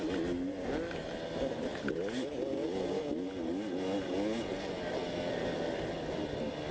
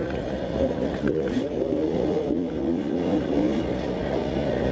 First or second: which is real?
first